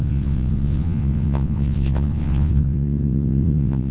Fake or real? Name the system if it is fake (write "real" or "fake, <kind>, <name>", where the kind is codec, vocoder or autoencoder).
fake, vocoder, WaveNeXt